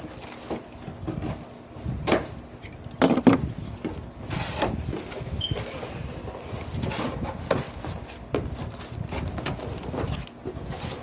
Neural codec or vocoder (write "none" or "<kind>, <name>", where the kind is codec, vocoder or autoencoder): none